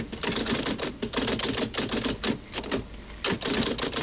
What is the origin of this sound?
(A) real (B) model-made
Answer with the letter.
A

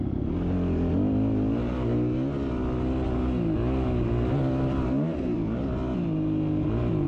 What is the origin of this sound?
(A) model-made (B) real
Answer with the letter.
B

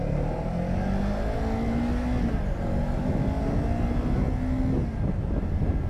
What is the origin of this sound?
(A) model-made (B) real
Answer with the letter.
B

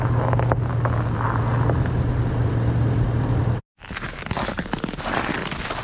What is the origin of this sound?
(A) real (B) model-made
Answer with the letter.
A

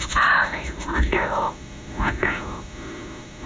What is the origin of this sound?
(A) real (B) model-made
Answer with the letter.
B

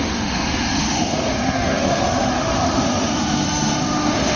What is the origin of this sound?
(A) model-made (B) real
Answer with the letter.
A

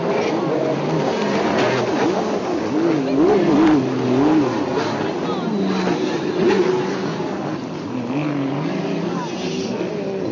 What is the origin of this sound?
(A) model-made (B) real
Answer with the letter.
B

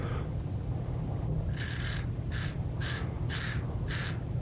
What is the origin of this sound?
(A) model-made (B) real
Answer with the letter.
B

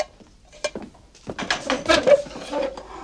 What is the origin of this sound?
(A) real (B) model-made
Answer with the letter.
A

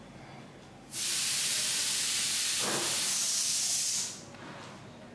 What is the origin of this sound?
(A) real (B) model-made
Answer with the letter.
A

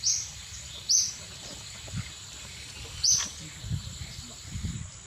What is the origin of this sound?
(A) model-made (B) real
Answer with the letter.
B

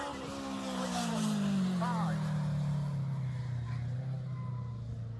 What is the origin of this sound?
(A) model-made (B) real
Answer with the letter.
B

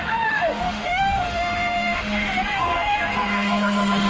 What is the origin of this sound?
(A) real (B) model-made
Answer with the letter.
B